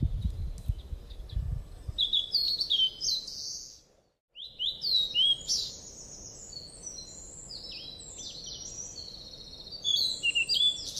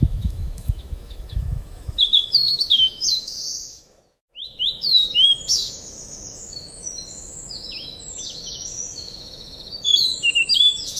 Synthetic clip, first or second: second